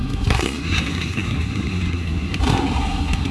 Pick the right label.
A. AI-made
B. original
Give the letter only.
A